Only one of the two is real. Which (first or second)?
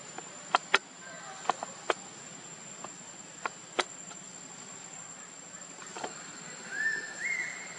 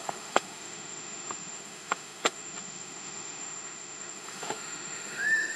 first